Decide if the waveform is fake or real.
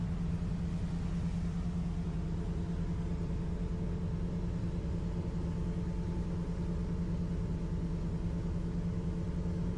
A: real